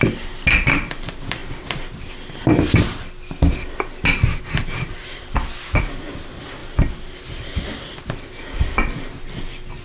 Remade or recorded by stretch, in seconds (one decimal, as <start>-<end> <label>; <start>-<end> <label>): 0.0-9.8 recorded